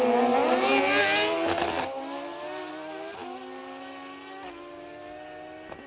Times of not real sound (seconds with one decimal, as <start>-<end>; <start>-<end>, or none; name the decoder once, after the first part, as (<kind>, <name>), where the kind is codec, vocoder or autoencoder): none